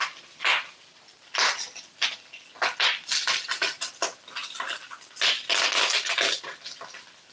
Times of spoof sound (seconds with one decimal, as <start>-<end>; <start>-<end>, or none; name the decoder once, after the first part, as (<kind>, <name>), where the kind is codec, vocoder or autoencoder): none